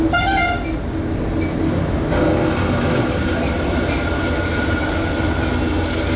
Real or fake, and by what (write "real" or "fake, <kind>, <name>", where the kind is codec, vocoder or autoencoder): real